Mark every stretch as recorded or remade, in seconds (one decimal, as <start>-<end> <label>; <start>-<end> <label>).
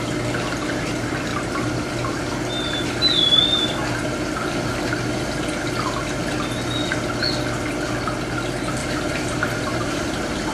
0.0-1.3 recorded; 1.3-1.9 remade; 1.9-8.8 recorded; 8.8-10.5 remade